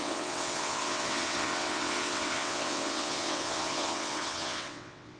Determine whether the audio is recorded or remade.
remade